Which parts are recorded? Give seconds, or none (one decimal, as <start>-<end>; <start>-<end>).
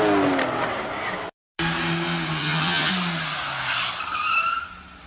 0.0-2.4; 2.9-5.1